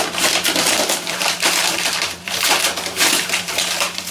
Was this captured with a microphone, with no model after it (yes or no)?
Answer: no